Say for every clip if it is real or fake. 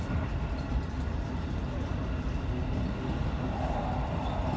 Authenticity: real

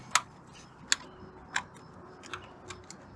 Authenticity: real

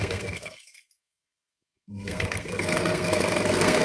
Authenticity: fake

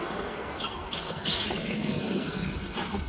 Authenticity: fake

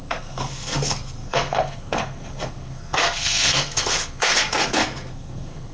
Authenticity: fake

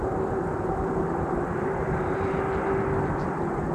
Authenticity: real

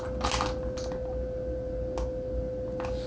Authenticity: real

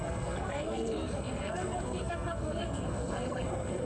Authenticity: fake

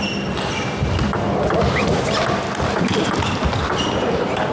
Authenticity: real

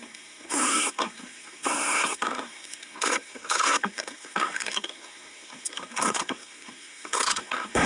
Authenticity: fake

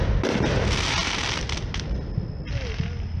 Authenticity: real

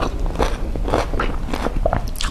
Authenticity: real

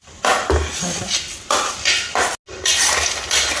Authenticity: real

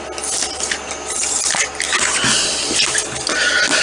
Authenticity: real